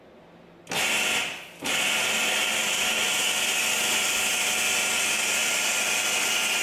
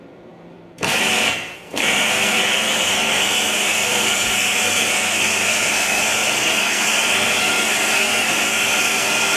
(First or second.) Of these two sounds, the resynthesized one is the second